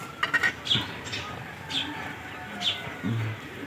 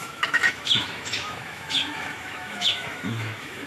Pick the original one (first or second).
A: first